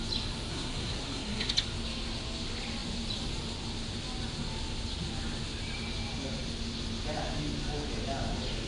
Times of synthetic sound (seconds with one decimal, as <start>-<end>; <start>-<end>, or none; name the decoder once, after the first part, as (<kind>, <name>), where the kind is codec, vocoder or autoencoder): 0.5-1.5 (codec, SNAC)